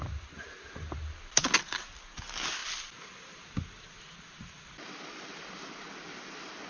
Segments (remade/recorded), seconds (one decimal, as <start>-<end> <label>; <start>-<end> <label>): 0.0-6.7 recorded